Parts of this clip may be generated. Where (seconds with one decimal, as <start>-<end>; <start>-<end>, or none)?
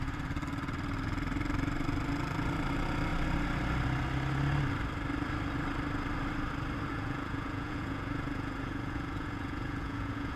6.9-10.4